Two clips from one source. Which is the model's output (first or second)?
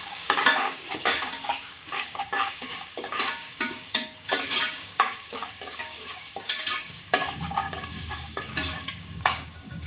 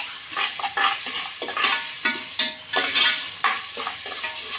first